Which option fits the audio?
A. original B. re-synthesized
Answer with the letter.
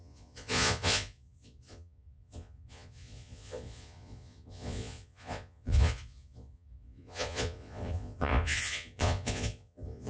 B